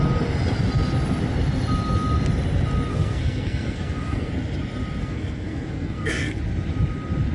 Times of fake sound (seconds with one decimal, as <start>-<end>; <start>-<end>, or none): 2.9-4.3; 5.0-6.4